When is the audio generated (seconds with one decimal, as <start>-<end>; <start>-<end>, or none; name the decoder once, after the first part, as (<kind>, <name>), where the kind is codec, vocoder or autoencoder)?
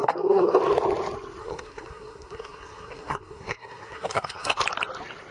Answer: 0.0-0.6 (codec, SNAC); 1.4-4.6